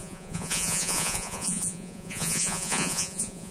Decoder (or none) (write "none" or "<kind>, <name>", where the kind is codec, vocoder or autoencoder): vocoder, Vocos